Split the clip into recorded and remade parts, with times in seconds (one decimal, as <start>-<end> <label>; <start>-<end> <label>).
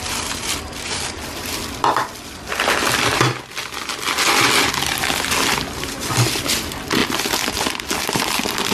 0.0-8.7 recorded